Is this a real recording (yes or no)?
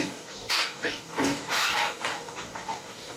no